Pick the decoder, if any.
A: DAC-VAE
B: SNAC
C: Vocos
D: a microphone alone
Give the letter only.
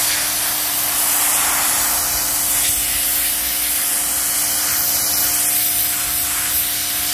D